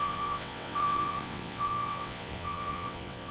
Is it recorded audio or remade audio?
remade